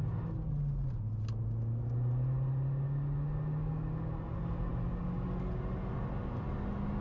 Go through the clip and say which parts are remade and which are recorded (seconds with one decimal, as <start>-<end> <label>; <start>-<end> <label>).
0.0-7.0 recorded